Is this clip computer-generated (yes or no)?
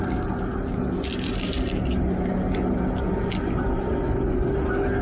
no